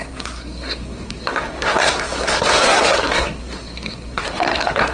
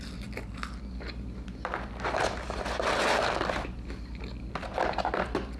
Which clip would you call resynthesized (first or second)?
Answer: first